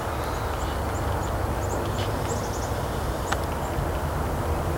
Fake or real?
real